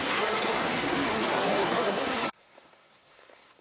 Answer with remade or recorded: remade